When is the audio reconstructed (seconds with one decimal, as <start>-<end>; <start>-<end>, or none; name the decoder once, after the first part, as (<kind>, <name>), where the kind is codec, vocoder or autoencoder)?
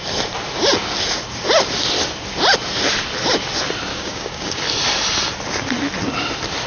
3.9-4.6 (codec, DAC)